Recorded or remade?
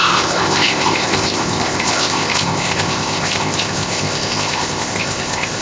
remade